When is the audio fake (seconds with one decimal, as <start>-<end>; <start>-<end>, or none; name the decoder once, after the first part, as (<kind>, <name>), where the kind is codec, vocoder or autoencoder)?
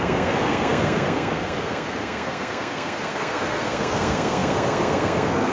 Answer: 0.0-5.5 (codec, SNAC)